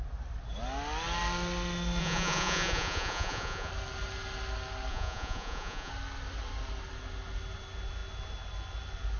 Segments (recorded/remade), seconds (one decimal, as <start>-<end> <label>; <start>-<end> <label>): 0.0-2.0 recorded; 2.0-3.7 remade; 3.7-4.9 recorded; 4.9-5.9 remade; 5.9-9.2 recorded